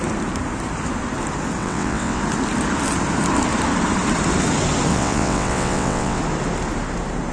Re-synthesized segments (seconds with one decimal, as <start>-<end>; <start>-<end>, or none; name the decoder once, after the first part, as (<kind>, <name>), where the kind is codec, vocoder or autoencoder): 1.6-2.2 (vocoder, WaveNeXt); 4.9-6.2